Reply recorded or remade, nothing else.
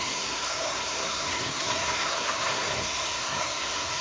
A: remade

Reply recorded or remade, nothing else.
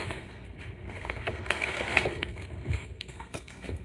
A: remade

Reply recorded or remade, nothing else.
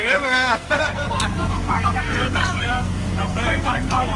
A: remade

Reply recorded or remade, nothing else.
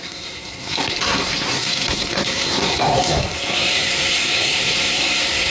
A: remade